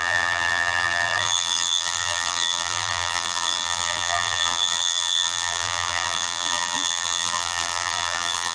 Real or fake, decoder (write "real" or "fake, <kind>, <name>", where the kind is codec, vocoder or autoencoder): fake, vocoder, BigVGAN v2